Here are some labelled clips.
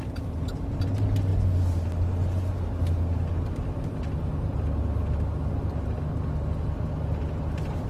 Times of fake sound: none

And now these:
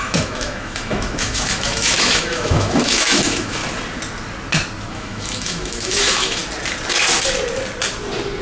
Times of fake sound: 0.0-3.6 (autoencoder, DAC-VAE); 4.9-6.4

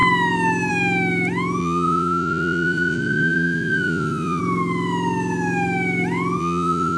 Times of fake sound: 1.6-4.4 (vocoder, Vocos); 6.4-7.0

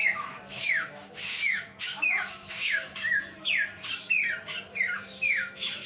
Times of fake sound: 0.0-3.5 (autoencoder, DAC-VAE); 4.7-5.9

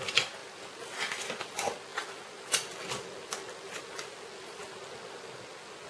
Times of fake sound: none

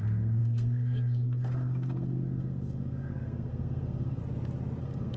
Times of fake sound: 0.0-4.2 (codec, SNAC); 4.8-5.2

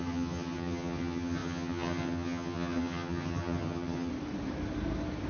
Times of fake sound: 0.0-4.1 (vocoder, HiFi-GAN)